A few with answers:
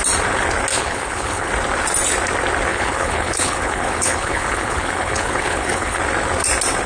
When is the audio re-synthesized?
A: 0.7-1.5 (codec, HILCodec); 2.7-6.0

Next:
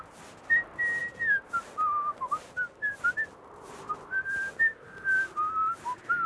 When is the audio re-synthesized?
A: none